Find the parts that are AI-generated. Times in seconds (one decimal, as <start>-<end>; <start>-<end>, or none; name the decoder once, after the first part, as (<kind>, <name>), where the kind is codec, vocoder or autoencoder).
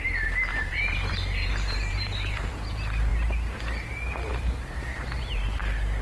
0.5-2.5 (vocoder, BigVGAN v2); 4.3-5.6